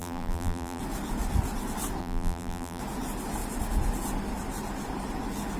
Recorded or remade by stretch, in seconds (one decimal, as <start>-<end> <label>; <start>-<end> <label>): 0.0-0.8 remade; 0.8-2.0 recorded; 2.0-2.8 remade; 2.8-5.6 recorded